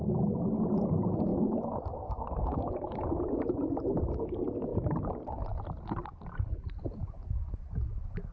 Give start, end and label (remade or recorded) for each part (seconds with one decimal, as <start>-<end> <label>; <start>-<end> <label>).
0.0-1.3 recorded; 1.3-3.2 remade; 3.2-8.3 recorded